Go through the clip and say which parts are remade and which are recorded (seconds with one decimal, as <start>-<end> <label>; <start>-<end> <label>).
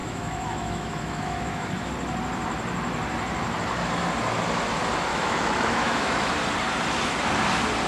0.0-1.9 remade; 1.9-5.1 recorded; 5.1-6.3 remade; 6.3-7.9 recorded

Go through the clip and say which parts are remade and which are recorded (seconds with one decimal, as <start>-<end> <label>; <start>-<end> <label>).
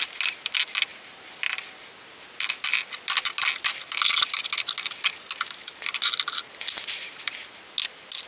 0.0-8.3 recorded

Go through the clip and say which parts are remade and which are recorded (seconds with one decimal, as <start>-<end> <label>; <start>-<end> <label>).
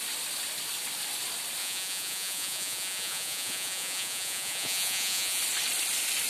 0.0-1.6 recorded; 1.6-5.4 remade; 5.4-6.3 recorded